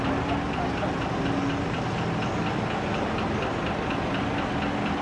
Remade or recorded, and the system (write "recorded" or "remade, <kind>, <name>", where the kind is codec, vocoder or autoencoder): recorded